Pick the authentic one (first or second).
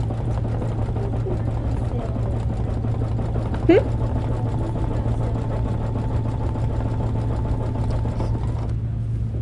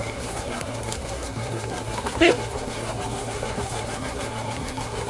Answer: first